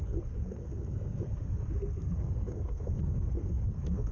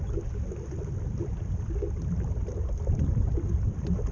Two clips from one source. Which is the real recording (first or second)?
second